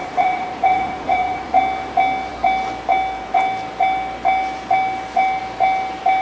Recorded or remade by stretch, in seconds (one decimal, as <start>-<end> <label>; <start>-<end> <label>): 0.0-1.6 remade; 1.6-6.2 recorded